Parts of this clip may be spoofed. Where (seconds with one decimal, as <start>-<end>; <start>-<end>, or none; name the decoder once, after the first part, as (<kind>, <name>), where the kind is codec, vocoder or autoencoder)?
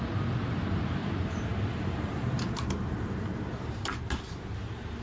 1.0-4.0 (vocoder, BigVGAN v2)